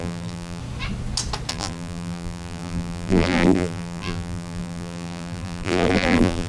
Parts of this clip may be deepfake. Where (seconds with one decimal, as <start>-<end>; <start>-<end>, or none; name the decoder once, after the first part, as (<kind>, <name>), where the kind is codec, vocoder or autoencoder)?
0.0-0.6 (vocoder, BigVGAN v2); 1.5-6.5